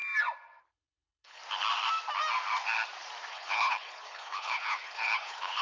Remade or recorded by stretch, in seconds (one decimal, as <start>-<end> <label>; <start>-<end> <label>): 0.0-0.6 recorded; 0.6-1.4 remade; 1.4-3.3 recorded; 3.3-5.6 remade